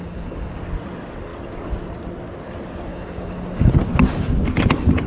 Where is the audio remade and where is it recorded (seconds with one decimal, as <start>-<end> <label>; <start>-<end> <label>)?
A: 0.0-0.6 remade; 0.6-2.9 recorded; 2.9-3.7 remade; 3.7-5.1 recorded